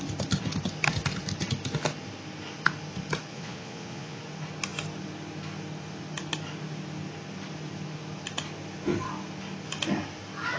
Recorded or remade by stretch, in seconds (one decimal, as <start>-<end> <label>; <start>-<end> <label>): 0.0-3.3 recorded; 3.3-4.2 remade; 4.2-10.6 recorded